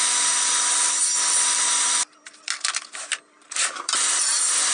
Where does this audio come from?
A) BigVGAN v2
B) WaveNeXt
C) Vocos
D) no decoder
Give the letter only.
D